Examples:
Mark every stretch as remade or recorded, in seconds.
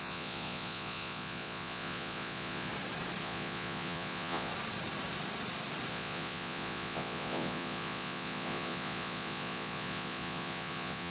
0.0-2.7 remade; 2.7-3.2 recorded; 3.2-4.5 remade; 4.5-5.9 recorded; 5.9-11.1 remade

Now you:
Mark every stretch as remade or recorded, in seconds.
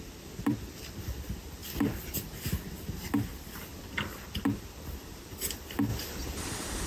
0.0-1.6 remade; 1.6-3.9 recorded; 3.9-6.9 remade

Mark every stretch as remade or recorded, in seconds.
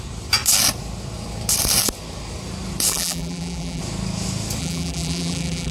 0.0-2.9 recorded; 2.9-3.8 remade; 3.8-4.6 recorded; 4.6-5.7 remade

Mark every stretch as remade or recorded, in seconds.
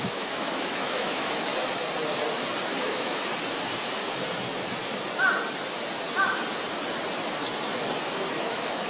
0.0-1.5 remade; 1.5-2.8 recorded; 2.8-3.3 remade; 3.3-8.4 recorded; 8.4-8.9 remade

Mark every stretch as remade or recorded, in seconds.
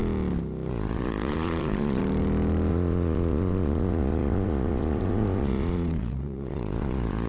0.0-0.7 recorded; 0.7-2.0 remade; 2.0-2.7 recorded; 2.7-7.3 remade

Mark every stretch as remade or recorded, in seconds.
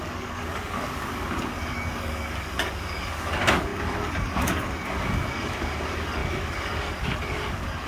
0.0-7.9 remade